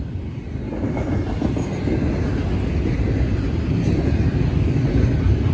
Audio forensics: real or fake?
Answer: real